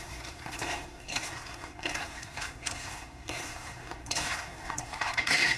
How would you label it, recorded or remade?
remade